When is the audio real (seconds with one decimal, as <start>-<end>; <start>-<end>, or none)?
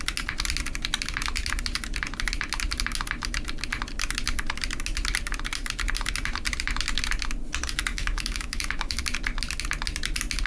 0.0-7.9; 9.0-10.5